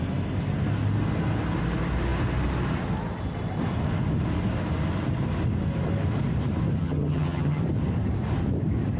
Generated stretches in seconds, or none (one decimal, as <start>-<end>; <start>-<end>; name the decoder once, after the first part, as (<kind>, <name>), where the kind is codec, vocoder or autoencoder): 6.8-7.6 (vocoder, HiFi-GAN)